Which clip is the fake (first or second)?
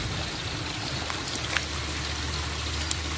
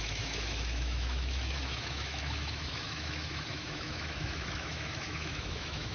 second